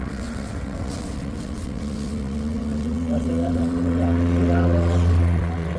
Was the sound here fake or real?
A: fake